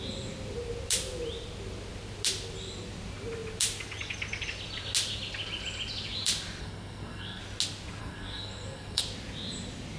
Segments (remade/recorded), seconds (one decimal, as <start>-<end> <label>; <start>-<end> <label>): 0.0-6.6 recorded; 6.6-7.4 remade; 7.4-8.0 recorded; 8.0-9.0 remade; 9.0-10.0 recorded